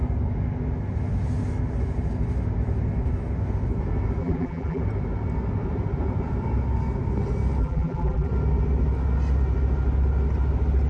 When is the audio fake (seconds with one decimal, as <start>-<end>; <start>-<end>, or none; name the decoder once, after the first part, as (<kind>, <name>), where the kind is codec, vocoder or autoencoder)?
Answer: 4.2-4.8 (vocoder, BigVGAN v2); 7.6-8.3